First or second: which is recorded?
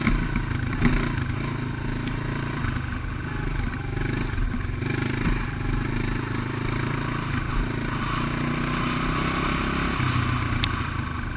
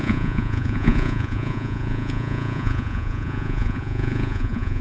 first